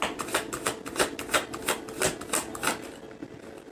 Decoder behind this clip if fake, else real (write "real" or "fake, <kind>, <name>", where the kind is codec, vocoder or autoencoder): real